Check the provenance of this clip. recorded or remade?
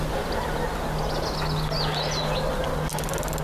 recorded